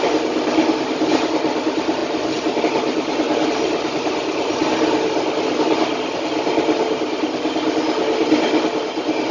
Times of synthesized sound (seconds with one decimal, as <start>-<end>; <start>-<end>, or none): none